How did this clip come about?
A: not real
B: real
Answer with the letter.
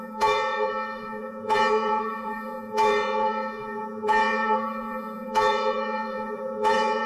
A